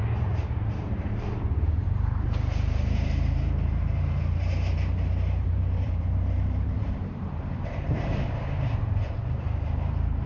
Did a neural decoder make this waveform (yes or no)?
yes